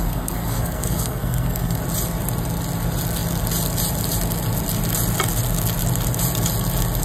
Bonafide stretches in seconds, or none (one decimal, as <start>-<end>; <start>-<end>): 1.8-7.0

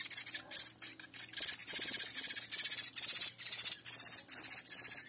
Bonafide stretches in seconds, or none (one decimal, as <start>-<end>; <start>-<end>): 0.0-5.1